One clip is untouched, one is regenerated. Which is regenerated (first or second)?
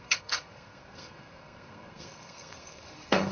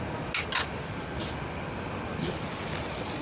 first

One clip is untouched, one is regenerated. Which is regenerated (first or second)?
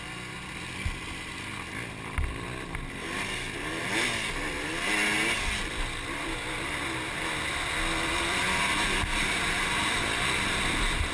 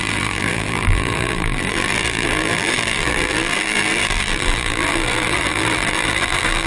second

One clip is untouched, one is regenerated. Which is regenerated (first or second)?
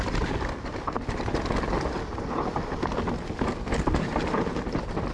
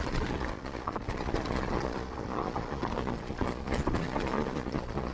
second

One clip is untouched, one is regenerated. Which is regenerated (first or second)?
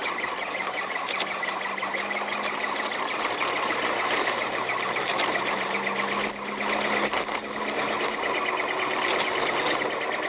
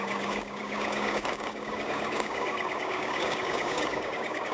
second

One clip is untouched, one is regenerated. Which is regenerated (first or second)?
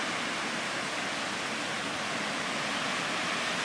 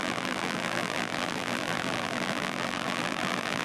second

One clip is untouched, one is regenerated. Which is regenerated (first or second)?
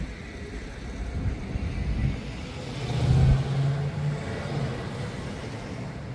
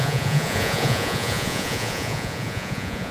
second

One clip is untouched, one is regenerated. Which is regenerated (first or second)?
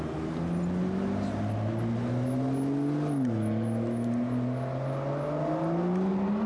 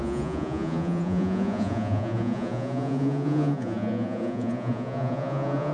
second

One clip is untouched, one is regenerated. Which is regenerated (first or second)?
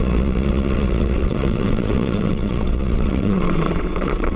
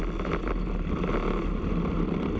first